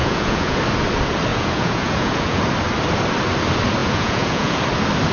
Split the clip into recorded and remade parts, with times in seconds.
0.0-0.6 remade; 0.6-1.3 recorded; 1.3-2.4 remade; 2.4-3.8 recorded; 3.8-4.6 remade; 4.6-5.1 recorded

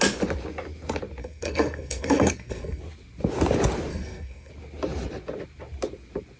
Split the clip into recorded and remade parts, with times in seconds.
0.0-1.2 recorded; 1.2-2.8 remade; 2.8-3.9 recorded; 3.9-4.5 remade; 4.5-6.4 recorded

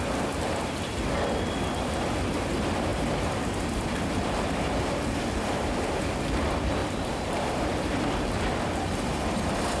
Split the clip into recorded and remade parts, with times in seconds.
0.0-2.9 recorded; 2.9-6.0 remade; 6.0-6.8 recorded; 6.8-8.4 remade; 8.4-9.8 recorded

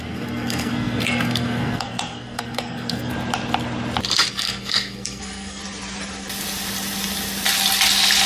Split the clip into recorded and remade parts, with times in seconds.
0.0-3.1 remade; 3.1-4.3 recorded; 4.3-5.6 remade; 5.6-8.3 recorded

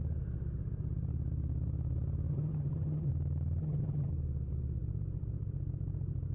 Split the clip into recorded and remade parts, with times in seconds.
0.0-2.3 recorded; 2.3-3.1 remade; 3.1-3.6 recorded; 3.6-4.1 remade; 4.1-6.3 recorded

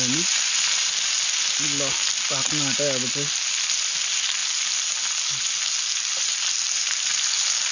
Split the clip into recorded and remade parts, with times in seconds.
0.0-7.7 recorded